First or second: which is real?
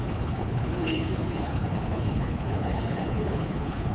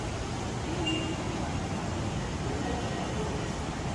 second